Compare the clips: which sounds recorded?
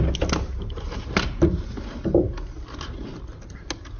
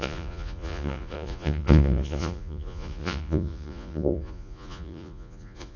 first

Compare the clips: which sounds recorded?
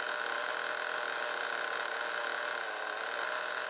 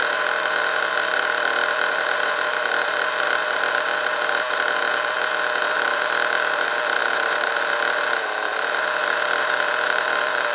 first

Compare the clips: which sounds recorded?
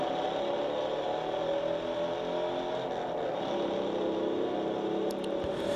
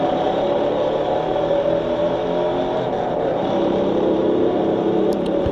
first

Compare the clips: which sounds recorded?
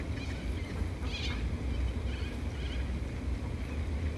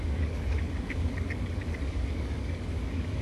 first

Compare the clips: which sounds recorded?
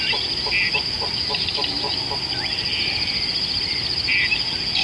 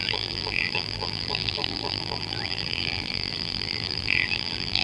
first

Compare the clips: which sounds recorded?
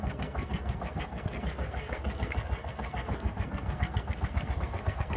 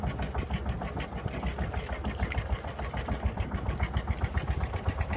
second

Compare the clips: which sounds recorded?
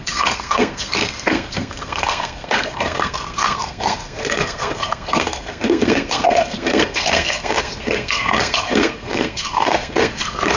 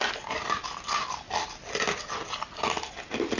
second